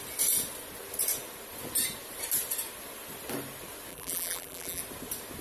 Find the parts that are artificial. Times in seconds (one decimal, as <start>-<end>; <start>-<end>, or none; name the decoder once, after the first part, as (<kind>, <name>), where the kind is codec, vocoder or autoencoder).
3.9-4.8 (vocoder, BigVGAN v2)